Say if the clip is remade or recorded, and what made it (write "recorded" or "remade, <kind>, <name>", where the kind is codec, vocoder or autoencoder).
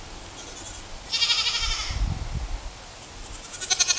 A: recorded